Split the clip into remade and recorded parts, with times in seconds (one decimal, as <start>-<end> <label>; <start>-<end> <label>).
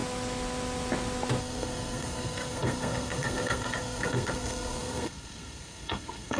0.0-1.4 recorded; 1.4-6.4 remade